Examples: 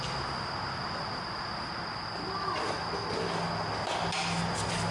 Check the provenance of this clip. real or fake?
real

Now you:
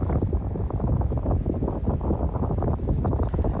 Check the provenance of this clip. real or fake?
real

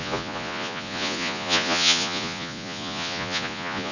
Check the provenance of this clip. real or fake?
fake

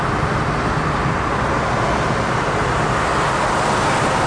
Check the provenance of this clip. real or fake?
real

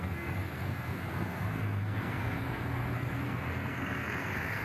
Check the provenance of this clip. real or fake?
fake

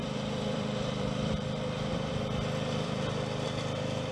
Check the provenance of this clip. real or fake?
fake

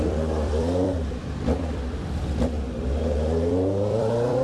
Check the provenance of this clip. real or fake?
fake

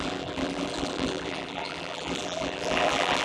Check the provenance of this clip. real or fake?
fake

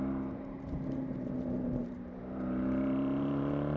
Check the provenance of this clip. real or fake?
fake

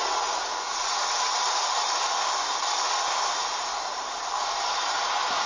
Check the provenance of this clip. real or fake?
real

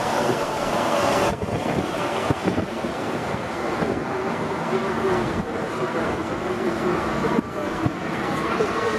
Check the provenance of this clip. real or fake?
fake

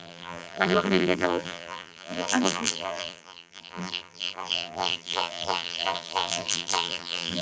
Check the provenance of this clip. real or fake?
fake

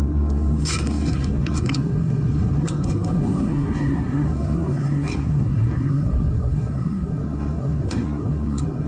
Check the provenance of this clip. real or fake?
fake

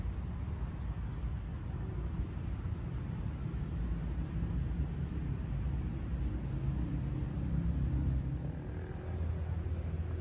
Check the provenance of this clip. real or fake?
real